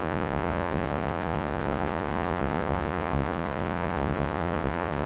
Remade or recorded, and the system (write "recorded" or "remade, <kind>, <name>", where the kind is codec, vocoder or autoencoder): remade, vocoder, Vocos